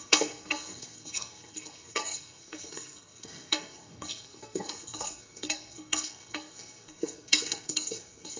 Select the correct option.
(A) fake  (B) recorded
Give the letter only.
A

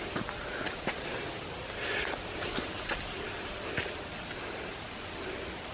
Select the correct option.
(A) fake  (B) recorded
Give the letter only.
B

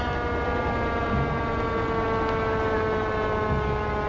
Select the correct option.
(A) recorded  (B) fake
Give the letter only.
A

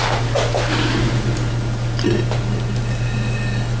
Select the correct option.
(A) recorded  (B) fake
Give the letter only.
A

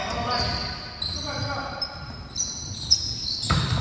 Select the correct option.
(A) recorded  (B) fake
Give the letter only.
A